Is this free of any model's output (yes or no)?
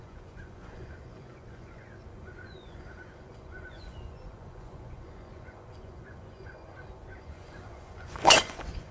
no